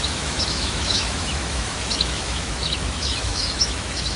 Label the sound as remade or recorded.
remade